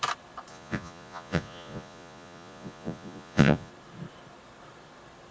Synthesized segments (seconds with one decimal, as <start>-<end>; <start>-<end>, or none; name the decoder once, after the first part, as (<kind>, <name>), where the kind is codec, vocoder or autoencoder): 0.5-3.7 (vocoder, Vocos)